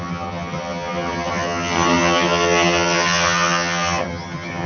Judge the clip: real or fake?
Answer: fake